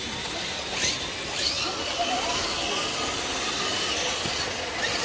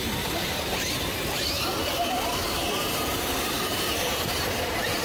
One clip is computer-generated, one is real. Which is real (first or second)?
first